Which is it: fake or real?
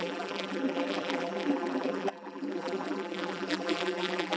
fake